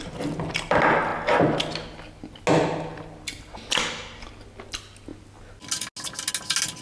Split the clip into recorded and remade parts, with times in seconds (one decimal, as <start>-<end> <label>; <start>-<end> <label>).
0.0-6.8 recorded